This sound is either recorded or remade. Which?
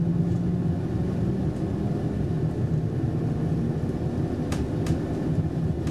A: recorded